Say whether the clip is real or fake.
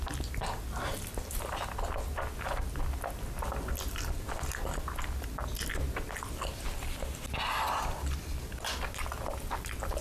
real